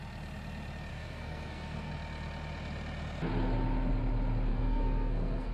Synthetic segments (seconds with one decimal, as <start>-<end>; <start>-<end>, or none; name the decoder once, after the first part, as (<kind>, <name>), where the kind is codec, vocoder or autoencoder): 0.9-1.9 (codec, SNAC); 4.5-5.5